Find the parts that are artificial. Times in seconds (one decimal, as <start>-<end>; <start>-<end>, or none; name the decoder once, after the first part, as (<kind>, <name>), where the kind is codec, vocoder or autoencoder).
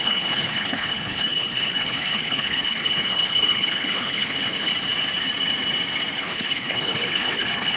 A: 0.0-4.7 (codec, HILCodec); 6.2-7.8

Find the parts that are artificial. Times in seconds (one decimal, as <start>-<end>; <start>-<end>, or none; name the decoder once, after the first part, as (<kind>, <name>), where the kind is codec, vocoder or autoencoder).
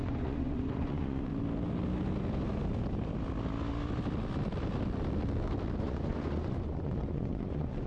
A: 0.0-1.3 (vocoder, Vocos); 5.8-7.9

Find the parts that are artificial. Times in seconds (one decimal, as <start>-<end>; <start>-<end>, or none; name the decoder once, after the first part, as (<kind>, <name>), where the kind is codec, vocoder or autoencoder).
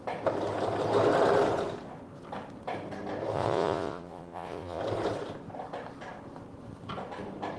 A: 3.3-4.8 (vocoder, Vocos)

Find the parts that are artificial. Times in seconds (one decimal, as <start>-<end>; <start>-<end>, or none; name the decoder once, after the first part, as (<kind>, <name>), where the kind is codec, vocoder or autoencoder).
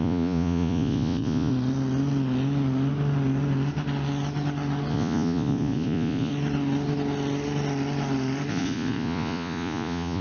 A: 0.0-1.5 (vocoder, Vocos); 4.9-6.3; 8.5-10.2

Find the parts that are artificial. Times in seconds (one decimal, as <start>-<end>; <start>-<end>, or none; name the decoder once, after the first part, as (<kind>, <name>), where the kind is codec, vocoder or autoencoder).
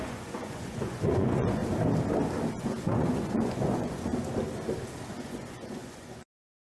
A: 0.0-1.6 (vocoder, Vocos); 2.5-4.1; 5.1-6.6